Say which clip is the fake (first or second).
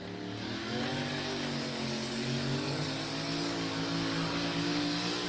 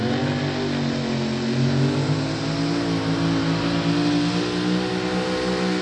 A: first